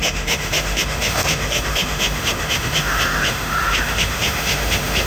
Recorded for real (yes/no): no